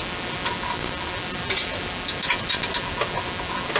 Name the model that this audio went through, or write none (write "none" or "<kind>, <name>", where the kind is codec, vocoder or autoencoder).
none